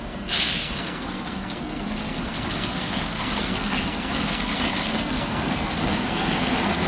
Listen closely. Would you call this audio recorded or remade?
remade